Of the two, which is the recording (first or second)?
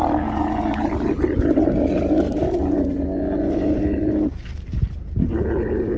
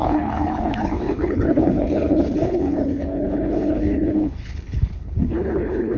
first